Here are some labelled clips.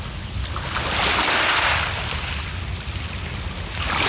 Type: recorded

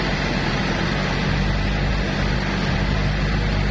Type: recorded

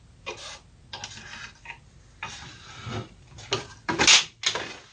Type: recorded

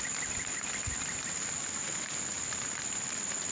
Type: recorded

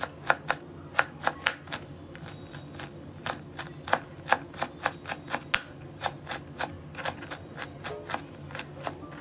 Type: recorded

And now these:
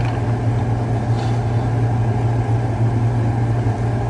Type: recorded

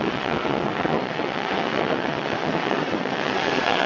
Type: remade